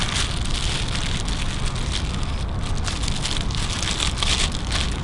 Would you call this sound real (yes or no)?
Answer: yes